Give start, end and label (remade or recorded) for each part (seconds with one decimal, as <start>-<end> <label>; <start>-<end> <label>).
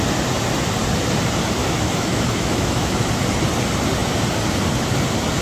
0.0-1.6 recorded; 1.6-3.1 remade; 3.1-5.4 recorded